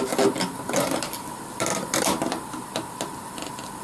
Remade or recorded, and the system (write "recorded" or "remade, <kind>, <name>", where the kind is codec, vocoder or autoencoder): remade, vocoder, BigVGAN v2